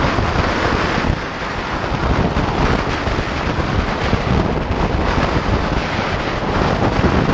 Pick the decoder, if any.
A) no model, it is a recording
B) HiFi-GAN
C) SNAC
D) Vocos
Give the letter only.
A